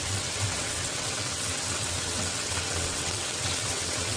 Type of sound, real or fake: fake